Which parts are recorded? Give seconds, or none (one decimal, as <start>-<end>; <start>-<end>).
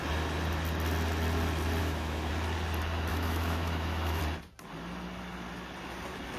0.0-1.8; 2.3-3.1; 4.2-6.4